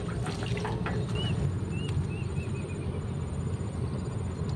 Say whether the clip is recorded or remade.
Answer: recorded